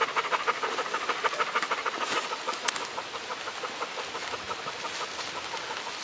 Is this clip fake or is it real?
real